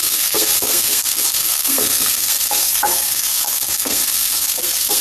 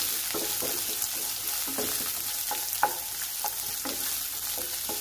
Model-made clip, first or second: first